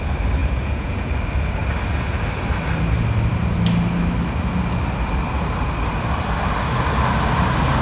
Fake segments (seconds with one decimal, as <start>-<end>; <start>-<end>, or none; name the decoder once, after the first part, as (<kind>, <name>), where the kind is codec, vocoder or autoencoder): 0.4-1.1 (vocoder, Vocos)